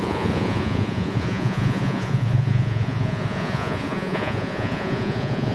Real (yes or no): no